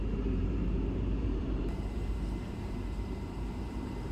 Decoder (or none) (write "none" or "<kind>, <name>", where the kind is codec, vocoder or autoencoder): vocoder, BigVGAN v2